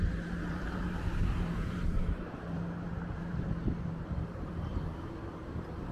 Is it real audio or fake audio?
fake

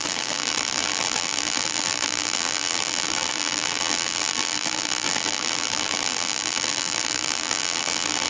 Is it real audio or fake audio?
fake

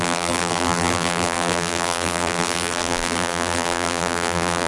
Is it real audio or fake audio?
fake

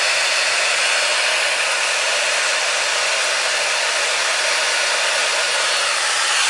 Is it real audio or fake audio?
real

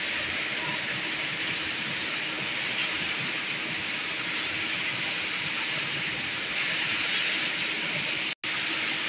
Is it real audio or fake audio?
real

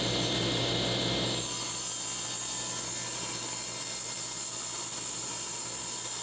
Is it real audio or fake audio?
real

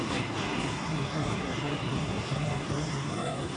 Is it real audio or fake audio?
fake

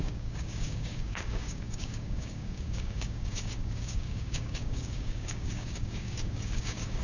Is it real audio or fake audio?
fake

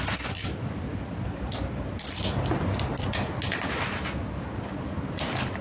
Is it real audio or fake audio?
real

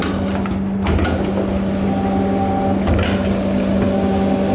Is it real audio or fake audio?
real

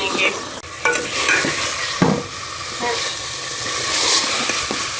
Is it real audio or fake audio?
real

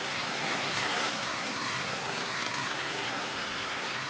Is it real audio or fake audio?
fake